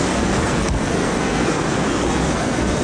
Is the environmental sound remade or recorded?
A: remade